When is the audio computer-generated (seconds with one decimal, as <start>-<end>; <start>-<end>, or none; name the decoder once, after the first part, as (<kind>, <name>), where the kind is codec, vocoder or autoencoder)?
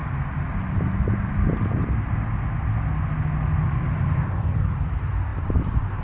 3.6-6.0 (vocoder, BigVGAN v2)